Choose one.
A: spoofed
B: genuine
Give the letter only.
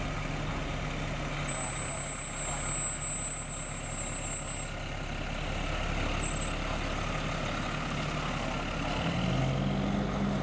B